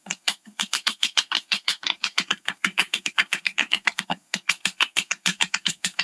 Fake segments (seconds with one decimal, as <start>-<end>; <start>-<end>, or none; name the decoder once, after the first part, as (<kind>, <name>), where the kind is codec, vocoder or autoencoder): 0.0-6.0 (codec, SNAC)